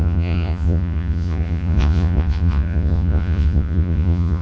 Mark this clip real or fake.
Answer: fake